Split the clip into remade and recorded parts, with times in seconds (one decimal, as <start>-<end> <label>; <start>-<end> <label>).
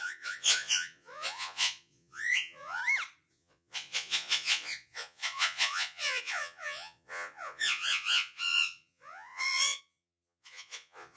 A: 0.0-2.8 remade; 2.8-3.3 recorded; 3.3-11.2 remade